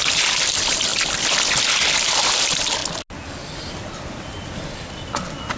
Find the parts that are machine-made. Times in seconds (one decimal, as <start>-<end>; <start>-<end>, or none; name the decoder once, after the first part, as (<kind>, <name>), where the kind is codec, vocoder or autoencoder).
0.0-0.9 (vocoder, BigVGAN v2); 1.9-2.8; 3.7-5.6